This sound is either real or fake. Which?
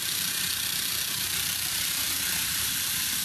fake